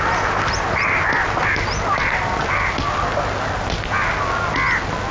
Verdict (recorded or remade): recorded